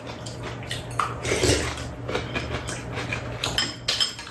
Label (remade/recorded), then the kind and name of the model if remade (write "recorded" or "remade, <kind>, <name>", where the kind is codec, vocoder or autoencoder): recorded